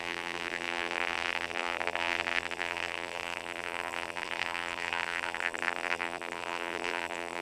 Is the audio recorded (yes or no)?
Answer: no